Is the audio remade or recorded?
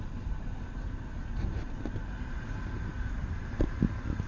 recorded